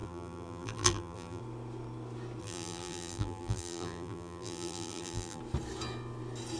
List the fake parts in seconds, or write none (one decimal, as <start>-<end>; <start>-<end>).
0.0-1.4; 2.4-5.4